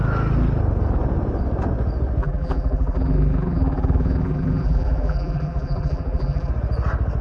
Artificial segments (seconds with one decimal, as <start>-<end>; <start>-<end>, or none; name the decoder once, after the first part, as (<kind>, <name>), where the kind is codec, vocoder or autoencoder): 2.2-6.5 (vocoder, BigVGAN v2)